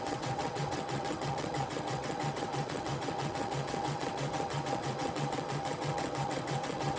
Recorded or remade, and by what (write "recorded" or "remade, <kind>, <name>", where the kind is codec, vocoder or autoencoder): remade, vocoder, WaveNeXt